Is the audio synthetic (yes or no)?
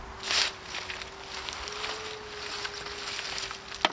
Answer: no